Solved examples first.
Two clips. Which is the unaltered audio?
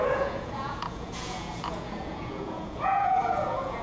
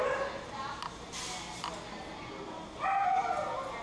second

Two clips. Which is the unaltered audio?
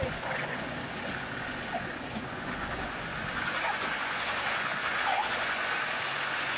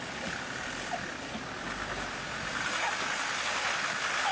second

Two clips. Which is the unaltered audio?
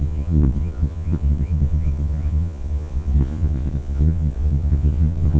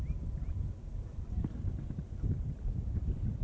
second